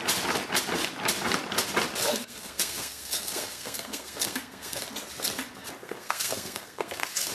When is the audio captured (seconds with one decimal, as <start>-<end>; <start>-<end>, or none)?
0.0-2.1; 4.8-5.8